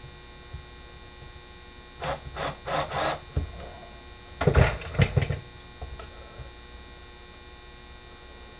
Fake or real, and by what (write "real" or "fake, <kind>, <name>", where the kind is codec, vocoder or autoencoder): real